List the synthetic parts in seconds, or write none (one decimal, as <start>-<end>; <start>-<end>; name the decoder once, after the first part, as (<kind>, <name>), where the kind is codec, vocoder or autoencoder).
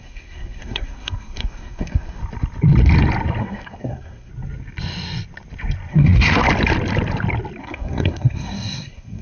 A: 0.0-2.2 (codec, SNAC); 3.4-4.3; 5.9-6.4; 7.6-9.2